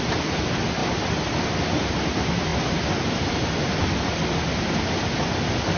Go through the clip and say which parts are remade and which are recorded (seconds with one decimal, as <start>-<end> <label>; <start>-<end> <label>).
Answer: 0.0-5.8 recorded